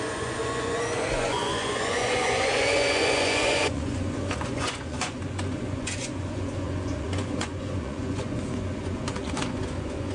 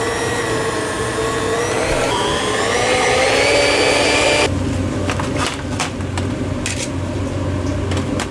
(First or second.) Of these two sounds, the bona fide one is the second